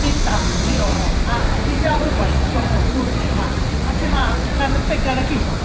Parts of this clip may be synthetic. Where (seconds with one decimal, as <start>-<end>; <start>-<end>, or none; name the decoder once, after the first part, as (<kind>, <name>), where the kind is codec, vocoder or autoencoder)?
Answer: 0.5-1.1 (vocoder, Vocos); 1.7-4.6